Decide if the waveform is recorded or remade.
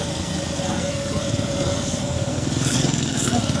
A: remade